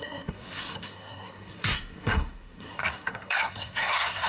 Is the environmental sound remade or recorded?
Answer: remade